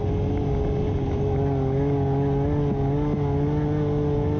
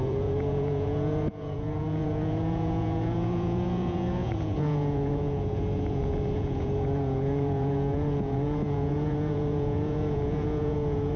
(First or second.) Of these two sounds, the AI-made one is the second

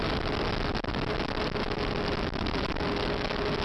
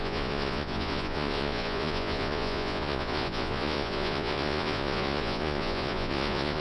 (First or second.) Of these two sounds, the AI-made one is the second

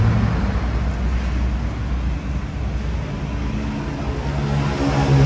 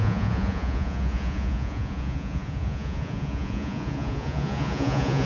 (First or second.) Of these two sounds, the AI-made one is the second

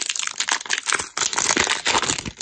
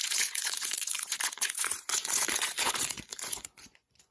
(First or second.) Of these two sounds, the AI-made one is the second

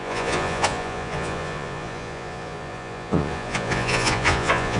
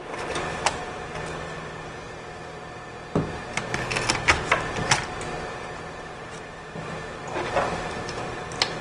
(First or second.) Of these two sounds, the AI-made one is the first